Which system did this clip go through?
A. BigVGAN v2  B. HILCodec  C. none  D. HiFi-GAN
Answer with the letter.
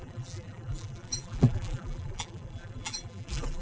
A